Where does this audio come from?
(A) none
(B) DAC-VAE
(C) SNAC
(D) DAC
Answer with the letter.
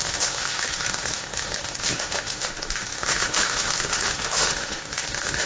B